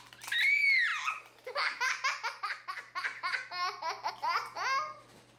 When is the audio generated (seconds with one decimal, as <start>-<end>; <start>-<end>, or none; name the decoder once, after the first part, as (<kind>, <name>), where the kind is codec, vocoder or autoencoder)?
none